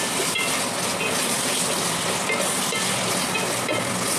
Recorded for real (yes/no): yes